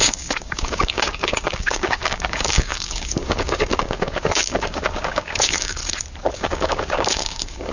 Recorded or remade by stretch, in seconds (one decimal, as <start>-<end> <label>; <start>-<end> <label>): 0.0-5.8 remade; 5.8-6.3 recorded; 6.3-7.7 remade

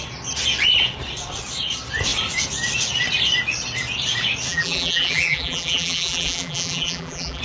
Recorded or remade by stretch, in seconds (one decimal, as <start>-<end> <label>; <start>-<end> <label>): 0.0-4.5 recorded; 4.5-7.4 remade

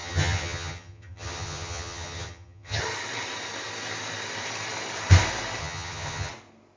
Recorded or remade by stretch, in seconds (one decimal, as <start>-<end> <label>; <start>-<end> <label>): 0.0-2.8 remade; 2.8-5.6 recorded; 5.6-6.3 remade; 6.3-6.8 recorded

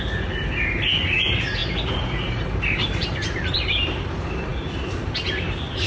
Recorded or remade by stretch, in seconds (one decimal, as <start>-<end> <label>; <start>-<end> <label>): 0.0-1.6 recorded; 1.6-4.1 remade; 4.1-5.9 recorded

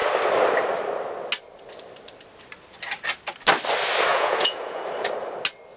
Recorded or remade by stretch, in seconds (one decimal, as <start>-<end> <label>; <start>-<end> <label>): 0.0-4.1 recorded; 4.1-4.8 remade; 4.8-5.8 recorded

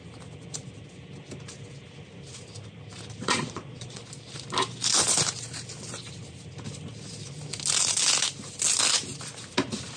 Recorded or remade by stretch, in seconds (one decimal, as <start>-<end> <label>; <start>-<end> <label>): 0.0-3.2 recorded; 3.2-4.0 remade; 4.0-10.0 recorded

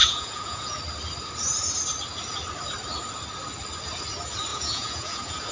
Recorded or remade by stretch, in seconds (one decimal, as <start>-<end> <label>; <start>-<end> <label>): 0.0-0.8 remade; 0.8-4.5 recorded; 4.5-5.5 remade